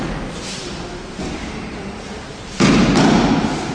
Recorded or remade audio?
recorded